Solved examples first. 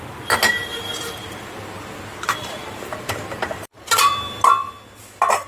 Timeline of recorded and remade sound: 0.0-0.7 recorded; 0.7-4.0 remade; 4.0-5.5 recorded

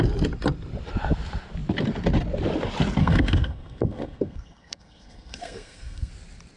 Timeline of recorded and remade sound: 0.0-3.0 recorded; 3.0-6.1 remade; 6.1-6.6 recorded

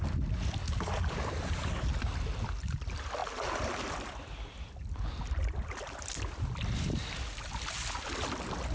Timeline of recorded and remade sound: 0.0-8.7 recorded

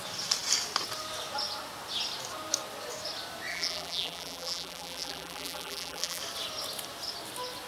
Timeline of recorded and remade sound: 0.0-3.5 recorded; 3.5-6.2 remade; 6.2-7.7 recorded

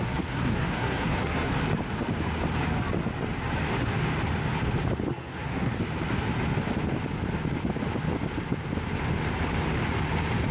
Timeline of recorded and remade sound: 0.0-1.5 remade; 1.5-5.1 recorded; 5.1-5.7 remade; 5.7-10.5 recorded

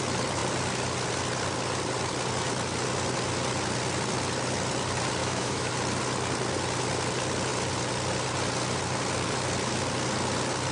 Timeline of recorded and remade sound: 0.0-5.2 recorded; 5.2-5.7 remade; 5.7-10.7 recorded